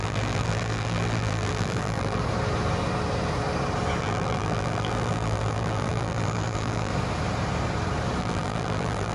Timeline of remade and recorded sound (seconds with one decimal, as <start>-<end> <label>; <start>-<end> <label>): 0.0-2.2 remade; 2.2-4.0 recorded; 4.0-6.9 remade; 6.9-8.2 recorded; 8.2-9.1 remade